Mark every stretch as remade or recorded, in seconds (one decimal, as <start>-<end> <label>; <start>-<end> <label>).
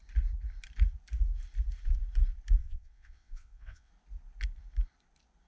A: 0.0-2.6 recorded; 2.6-3.9 remade; 3.9-5.5 recorded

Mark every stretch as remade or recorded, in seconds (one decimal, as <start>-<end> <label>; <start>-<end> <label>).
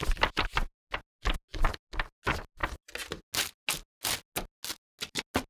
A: 0.0-5.5 recorded